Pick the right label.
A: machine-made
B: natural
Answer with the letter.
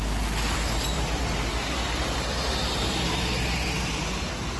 B